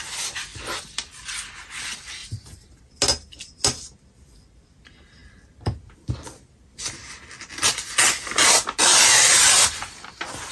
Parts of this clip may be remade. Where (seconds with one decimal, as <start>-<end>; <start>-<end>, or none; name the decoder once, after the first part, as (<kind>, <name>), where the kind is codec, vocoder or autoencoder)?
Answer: 2.2-2.8 (vocoder, BigVGAN v2)